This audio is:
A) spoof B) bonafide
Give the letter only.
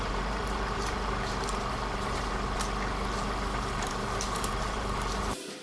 A